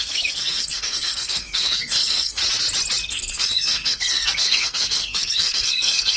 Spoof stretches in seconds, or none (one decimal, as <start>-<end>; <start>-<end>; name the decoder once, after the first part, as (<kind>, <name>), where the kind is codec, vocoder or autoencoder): 0.0-2.4 (codec, SNAC); 3.1-6.2

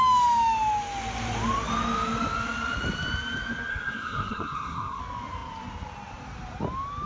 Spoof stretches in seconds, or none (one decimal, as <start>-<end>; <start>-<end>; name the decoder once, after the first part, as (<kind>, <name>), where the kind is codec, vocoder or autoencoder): 3.7-5.0 (codec, SNAC)

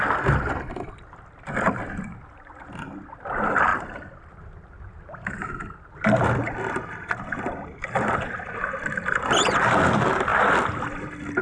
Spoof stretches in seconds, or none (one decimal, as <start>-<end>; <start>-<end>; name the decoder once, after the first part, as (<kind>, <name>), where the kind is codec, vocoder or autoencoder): 0.0-11.4 (vocoder, BigVGAN v2)

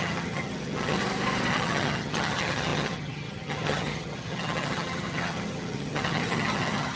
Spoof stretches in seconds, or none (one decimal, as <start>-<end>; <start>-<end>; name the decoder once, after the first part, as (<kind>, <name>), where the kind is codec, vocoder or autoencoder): 0.0-1.0 (vocoder, HiFi-GAN); 1.5-7.0

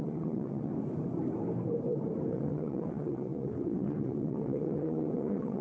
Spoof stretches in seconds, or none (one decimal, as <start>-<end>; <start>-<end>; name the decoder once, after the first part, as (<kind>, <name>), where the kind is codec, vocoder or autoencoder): 0.0-0.7 (vocoder, WaveNeXt); 2.3-5.6

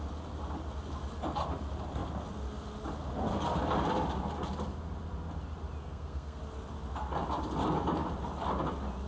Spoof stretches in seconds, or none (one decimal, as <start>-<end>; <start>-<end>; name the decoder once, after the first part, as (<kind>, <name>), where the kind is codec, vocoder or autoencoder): 5.8-6.4 (codec, SNAC)

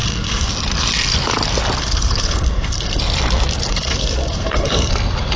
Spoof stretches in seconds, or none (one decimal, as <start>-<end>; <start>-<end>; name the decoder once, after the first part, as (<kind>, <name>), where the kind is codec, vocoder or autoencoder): 0.0-0.5 (codec, SNAC); 1.8-3.0; 3.7-4.9

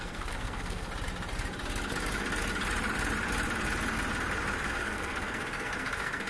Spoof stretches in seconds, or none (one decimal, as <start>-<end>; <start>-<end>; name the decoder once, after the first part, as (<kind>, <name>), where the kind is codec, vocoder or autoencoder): 0.0-0.9 (codec, SNAC); 4.7-6.3